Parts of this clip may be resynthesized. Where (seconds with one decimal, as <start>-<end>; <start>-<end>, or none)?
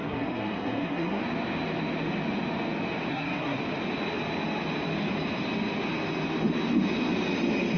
0.0-1.2; 3.1-3.6